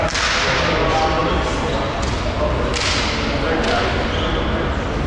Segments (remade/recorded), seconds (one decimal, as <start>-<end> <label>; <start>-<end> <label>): 0.0-5.1 recorded